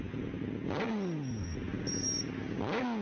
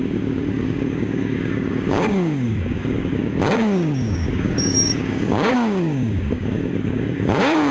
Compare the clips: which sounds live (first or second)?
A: first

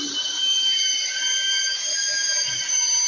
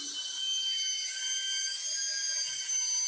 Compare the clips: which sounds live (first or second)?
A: second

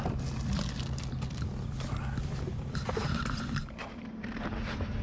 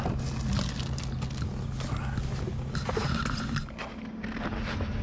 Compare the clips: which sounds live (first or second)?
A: second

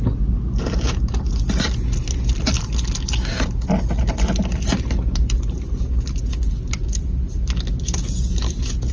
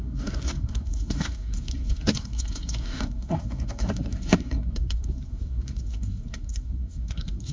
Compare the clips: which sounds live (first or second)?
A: first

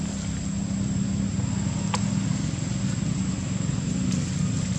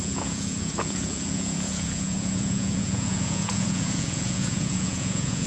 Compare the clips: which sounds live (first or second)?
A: first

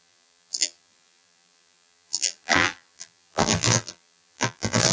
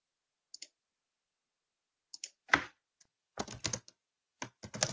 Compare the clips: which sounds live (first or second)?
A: second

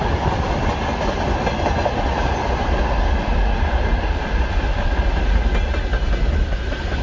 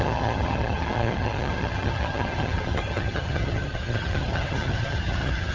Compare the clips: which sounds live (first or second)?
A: first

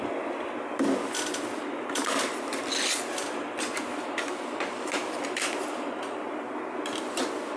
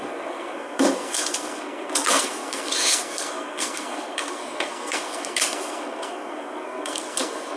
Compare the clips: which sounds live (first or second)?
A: first